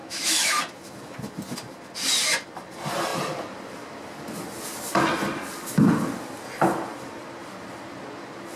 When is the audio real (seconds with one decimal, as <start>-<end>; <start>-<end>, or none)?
0.6-8.6

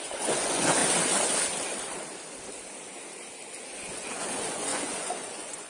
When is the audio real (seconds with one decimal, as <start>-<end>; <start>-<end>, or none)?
0.8-3.5

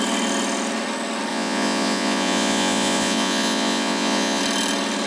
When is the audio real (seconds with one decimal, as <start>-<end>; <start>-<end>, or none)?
0.0-1.3; 4.4-5.1